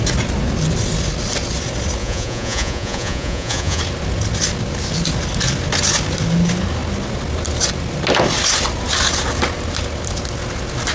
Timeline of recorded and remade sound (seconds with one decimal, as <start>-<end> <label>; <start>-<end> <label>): 0.0-2.0 recorded; 2.0-3.8 remade; 3.8-10.9 recorded